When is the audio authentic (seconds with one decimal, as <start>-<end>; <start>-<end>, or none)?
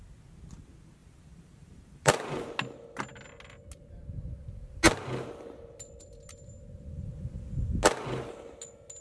0.0-1.0; 2.4-9.0